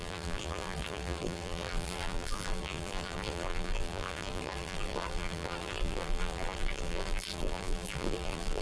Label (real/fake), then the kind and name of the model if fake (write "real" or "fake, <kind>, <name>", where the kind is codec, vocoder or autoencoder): fake, vocoder, BigVGAN v2